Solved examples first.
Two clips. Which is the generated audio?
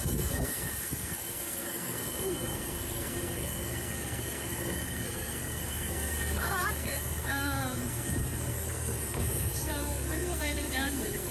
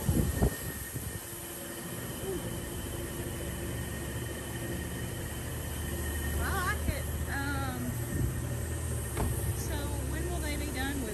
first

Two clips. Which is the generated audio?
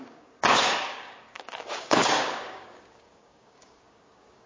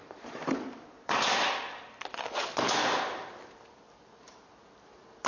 first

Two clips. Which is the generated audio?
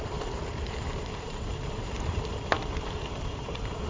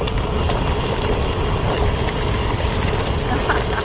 first